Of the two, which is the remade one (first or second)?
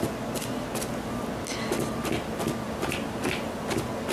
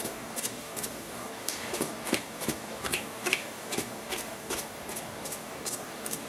second